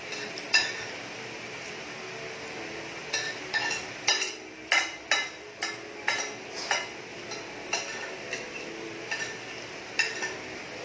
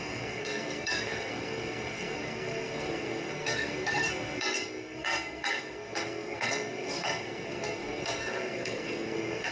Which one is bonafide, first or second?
first